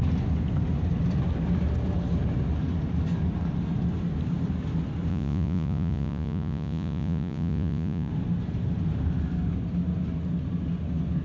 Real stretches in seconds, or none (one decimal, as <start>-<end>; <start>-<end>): 0.0-5.1; 8.1-11.2